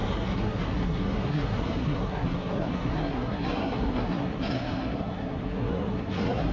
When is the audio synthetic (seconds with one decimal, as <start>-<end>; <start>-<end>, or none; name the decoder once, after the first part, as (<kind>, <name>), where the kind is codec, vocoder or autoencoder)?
0.0-6.5 (codec, SNAC)